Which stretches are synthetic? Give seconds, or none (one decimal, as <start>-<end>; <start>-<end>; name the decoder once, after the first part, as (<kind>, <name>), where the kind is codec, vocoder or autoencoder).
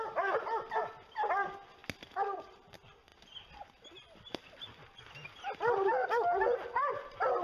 none